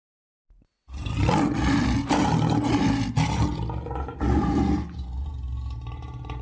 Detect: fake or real real